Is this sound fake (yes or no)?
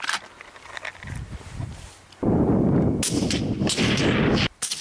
no